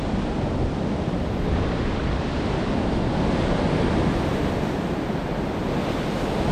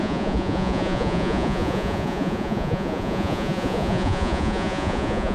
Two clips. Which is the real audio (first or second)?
first